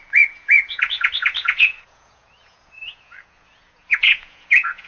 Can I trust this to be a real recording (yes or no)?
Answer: no